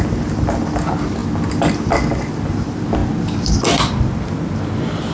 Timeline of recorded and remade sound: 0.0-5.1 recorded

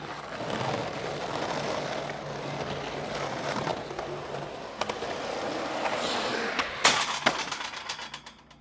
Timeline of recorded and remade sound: 0.0-8.6 recorded

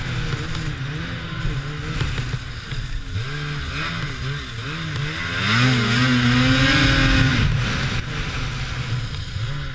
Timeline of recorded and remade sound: 0.0-9.7 recorded

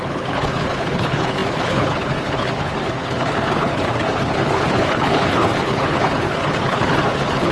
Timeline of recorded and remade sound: 0.0-7.5 remade